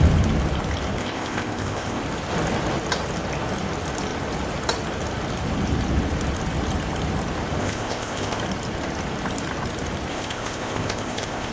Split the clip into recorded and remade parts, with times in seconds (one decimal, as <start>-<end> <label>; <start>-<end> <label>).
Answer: 0.0-1.0 recorded; 1.0-2.0 remade; 2.0-7.6 recorded; 7.6-8.4 remade; 8.4-10.1 recorded; 10.1-11.5 remade